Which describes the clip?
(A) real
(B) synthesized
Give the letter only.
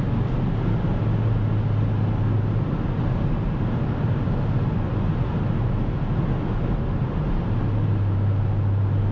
A